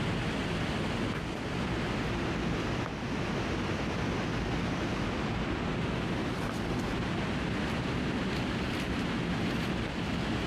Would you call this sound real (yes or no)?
yes